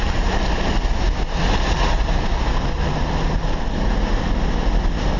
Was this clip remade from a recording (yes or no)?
no